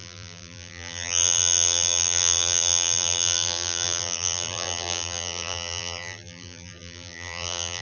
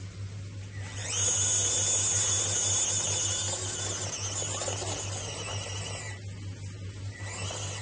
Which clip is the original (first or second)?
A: second